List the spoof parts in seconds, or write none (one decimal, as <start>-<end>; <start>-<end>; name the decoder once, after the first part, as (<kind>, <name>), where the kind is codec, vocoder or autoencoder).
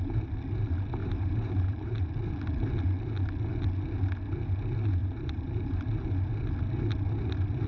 1.0-2.1 (vocoder, BigVGAN v2); 5.0-5.8